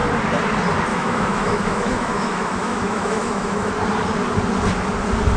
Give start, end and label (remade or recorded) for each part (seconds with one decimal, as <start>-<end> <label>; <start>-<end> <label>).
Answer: 0.0-0.9 recorded; 0.9-3.7 remade; 3.7-5.4 recorded